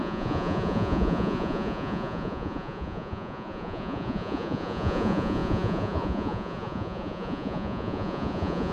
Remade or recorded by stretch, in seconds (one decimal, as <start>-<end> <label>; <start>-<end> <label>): 0.0-8.7 remade